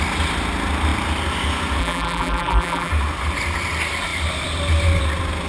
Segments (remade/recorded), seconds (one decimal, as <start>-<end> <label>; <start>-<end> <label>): 0.0-1.8 recorded; 1.8-2.9 remade; 2.9-5.5 recorded